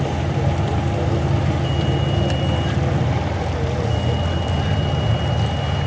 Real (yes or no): yes